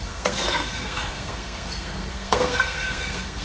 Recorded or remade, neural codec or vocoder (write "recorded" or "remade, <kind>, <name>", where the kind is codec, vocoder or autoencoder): remade, codec, SNAC